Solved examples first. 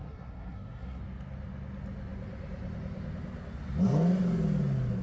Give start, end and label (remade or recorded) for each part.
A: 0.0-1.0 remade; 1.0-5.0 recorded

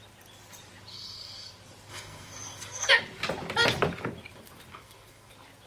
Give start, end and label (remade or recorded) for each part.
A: 0.0-0.9 recorded; 0.9-1.5 remade; 1.5-1.9 recorded; 1.9-2.9 remade; 2.9-4.7 recorded; 4.7-5.3 remade; 5.3-5.7 recorded

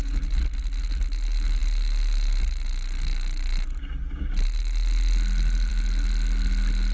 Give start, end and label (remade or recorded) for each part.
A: 0.0-6.9 recorded

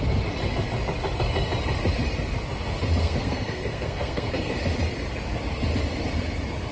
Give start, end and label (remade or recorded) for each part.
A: 0.0-3.0 recorded; 3.0-4.6 remade; 4.6-6.7 recorded